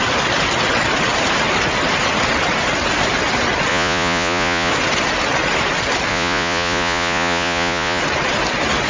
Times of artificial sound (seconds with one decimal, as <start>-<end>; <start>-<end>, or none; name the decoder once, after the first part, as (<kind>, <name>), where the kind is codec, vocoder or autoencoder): 3.7-4.7 (vocoder, Vocos); 6.1-8.0